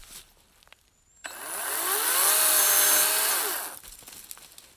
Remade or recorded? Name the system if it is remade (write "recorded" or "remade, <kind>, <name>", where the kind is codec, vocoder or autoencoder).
recorded